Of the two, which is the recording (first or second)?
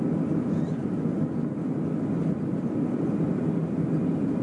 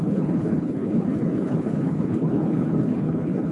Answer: first